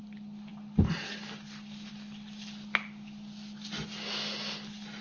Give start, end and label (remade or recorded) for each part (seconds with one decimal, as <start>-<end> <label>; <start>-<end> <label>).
0.0-5.0 recorded